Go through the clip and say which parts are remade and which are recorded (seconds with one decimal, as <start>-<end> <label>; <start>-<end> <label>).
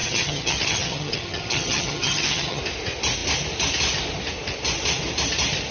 0.0-2.6 remade; 2.6-5.7 recorded